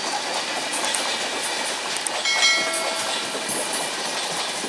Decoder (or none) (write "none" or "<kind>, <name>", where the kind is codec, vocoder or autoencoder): none